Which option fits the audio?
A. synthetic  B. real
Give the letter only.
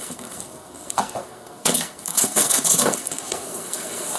A